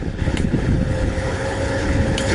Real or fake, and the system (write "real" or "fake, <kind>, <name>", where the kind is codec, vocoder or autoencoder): fake, codec, HILCodec